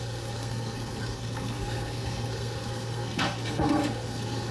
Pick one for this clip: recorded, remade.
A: remade